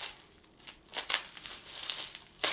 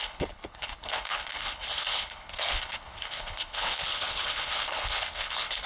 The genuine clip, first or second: first